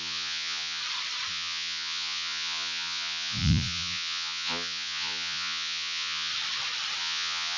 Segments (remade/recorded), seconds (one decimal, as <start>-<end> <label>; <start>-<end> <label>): 0.0-0.8 remade; 0.8-1.3 recorded; 1.3-6.3 remade; 6.3-7.0 recorded; 7.0-7.6 remade